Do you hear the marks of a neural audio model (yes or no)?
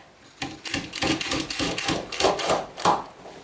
no